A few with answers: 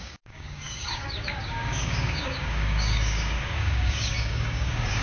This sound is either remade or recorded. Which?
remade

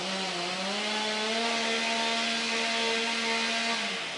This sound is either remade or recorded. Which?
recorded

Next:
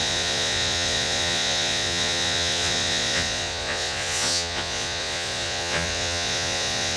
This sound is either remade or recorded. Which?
remade